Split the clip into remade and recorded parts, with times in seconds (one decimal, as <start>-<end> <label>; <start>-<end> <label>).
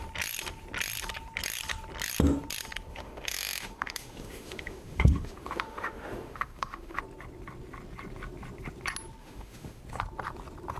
0.0-2.9 recorded; 2.9-7.0 remade; 7.0-9.2 recorded; 9.2-9.8 remade; 9.8-10.8 recorded